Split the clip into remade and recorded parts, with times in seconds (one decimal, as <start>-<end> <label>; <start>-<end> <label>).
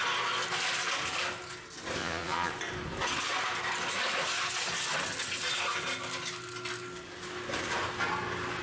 0.0-2.0 recorded; 2.0-2.5 remade; 2.5-8.6 recorded